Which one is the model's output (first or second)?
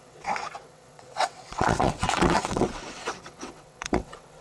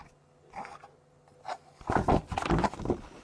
first